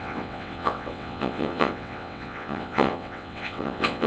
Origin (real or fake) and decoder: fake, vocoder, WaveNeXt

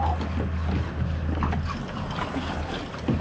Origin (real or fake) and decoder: real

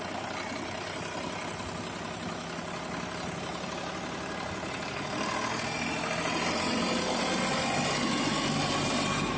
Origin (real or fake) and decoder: real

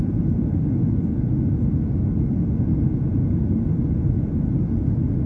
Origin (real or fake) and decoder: real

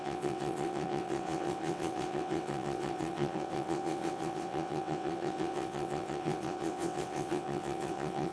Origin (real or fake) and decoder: fake, vocoder, WaveNeXt